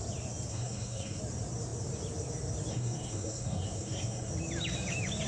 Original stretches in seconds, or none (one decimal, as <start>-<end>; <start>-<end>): 0.0-0.5; 1.2-2.7; 4.3-5.3